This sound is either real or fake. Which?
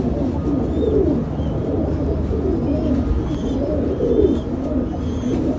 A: real